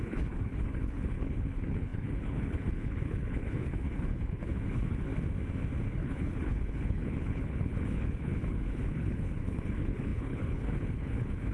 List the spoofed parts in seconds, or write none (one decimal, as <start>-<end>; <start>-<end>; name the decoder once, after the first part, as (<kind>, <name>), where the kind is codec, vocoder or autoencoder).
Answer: 0.0-5.1 (codec, HILCodec); 5.9-11.5